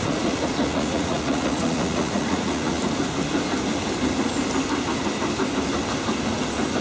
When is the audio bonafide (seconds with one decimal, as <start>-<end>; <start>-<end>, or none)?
2.8-6.8